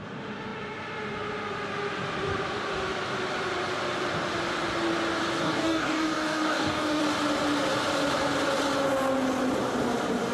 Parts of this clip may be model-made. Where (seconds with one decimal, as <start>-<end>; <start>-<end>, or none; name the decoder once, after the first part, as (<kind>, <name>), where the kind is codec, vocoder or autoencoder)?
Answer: 5.4-7.0 (codec, DAC)